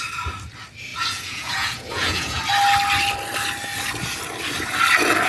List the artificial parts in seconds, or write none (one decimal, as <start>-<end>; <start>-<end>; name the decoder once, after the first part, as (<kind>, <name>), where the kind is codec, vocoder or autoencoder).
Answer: 0.9-2.4 (vocoder, Vocos)